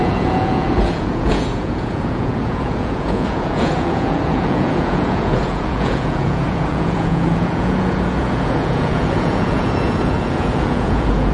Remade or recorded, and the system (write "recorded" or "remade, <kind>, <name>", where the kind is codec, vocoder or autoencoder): remade, vocoder, Vocos